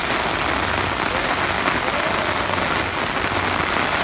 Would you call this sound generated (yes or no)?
no